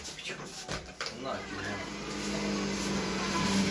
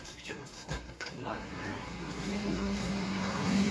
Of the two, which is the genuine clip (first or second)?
first